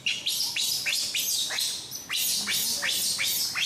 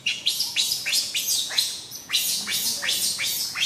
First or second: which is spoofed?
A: second